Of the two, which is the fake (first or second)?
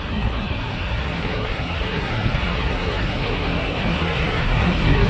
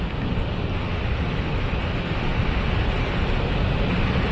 first